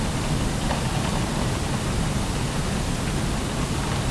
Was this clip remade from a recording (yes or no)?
no